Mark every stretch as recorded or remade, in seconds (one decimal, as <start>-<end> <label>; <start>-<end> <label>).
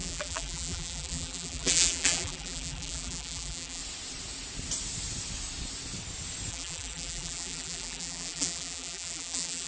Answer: 0.0-3.8 remade; 3.8-6.5 recorded; 6.5-9.7 remade